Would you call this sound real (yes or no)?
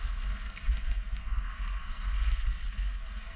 no